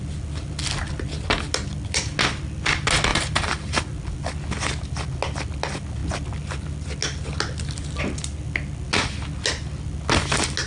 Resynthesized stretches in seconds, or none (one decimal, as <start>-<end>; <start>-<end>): 3.1-3.8